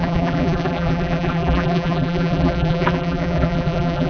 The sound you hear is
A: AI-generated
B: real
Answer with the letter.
A